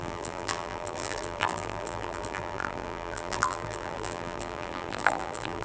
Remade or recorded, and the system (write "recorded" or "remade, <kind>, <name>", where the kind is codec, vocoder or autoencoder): remade, vocoder, BigVGAN v2